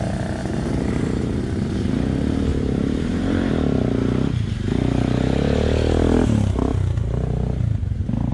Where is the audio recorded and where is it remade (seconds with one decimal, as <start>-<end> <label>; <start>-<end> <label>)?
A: 0.0-0.4 recorded; 0.4-1.4 remade; 1.4-2.5 recorded; 2.5-3.5 remade; 3.5-8.3 recorded